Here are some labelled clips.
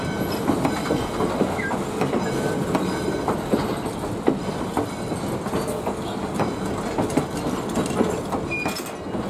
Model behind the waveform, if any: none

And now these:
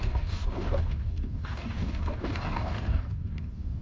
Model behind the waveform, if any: codec, DAC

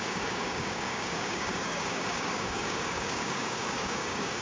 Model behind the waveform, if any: codec, DAC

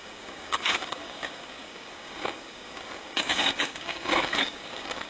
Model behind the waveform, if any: codec, DAC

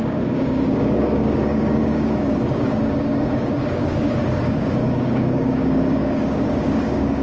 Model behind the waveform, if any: codec, DAC